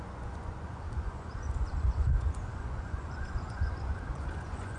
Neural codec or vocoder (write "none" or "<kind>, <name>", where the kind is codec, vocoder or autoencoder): vocoder, Vocos